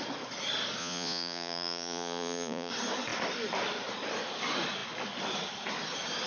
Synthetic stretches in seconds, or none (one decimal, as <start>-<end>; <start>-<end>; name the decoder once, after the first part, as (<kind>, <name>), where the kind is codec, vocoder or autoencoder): 0.8-2.7 (vocoder, Vocos)

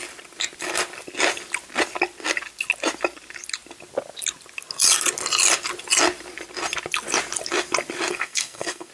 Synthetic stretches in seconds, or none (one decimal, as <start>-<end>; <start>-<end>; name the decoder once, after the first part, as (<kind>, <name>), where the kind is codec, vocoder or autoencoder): 8.1-8.9 (codec, SNAC)

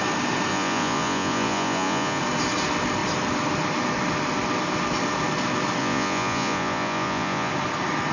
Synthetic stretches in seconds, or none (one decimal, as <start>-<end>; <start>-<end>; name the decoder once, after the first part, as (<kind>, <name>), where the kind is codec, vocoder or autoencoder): 0.5-2.2 (vocoder, Vocos); 5.8-7.5

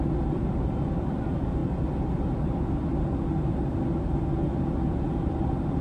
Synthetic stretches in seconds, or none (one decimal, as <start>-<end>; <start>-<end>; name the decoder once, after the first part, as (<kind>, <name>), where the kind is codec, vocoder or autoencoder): none

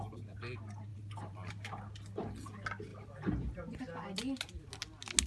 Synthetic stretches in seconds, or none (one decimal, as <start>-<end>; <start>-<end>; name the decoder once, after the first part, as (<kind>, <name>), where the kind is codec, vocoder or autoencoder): 0.9-1.5 (vocoder, BigVGAN v2)

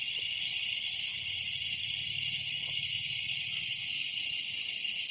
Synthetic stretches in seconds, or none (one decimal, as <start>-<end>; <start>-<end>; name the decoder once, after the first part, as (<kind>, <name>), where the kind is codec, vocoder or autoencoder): 1.1-4.2 (vocoder, BigVGAN v2)

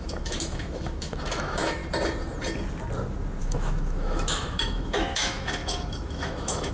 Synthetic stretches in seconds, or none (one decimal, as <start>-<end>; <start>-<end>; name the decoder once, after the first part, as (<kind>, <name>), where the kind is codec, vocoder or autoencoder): 0.0-1.8 (autoencoder, DAC-VAE); 3.4-6.7